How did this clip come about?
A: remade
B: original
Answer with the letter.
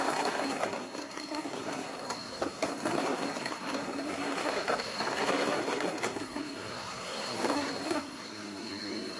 A